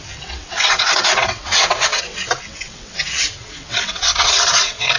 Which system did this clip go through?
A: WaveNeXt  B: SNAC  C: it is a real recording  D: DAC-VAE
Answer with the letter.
A